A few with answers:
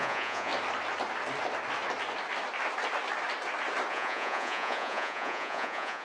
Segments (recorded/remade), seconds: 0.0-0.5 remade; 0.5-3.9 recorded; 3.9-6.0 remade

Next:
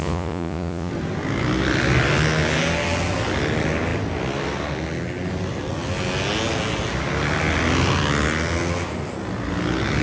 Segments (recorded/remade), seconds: 0.0-0.9 remade; 0.9-10.0 recorded

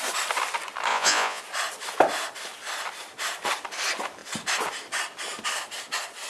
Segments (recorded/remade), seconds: 0.0-0.9 recorded; 0.9-1.4 remade; 1.4-6.3 recorded

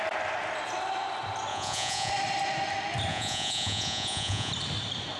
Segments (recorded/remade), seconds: 0.0-1.5 recorded; 1.5-2.1 remade; 2.1-3.1 recorded; 3.1-4.5 remade; 4.5-5.2 recorded

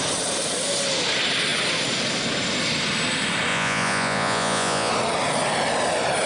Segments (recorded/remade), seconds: 0.0-3.5 recorded; 3.5-4.9 remade; 4.9-6.3 recorded

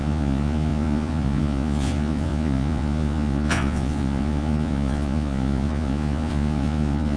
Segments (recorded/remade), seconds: 0.0-7.2 remade

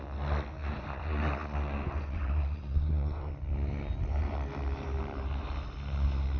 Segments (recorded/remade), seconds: 0.0-0.6 recorded; 0.6-3.3 remade; 3.3-6.4 recorded

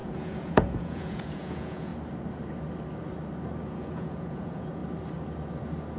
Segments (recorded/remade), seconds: 0.0-1.9 remade; 1.9-3.7 recorded; 3.7-4.8 remade; 4.8-6.0 recorded